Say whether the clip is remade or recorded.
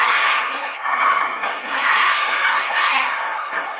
remade